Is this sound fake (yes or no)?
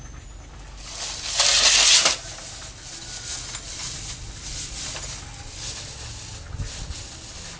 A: no